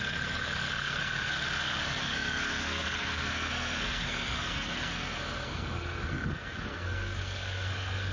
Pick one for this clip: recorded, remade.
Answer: remade